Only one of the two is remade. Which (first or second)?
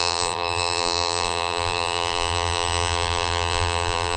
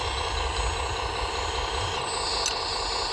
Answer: first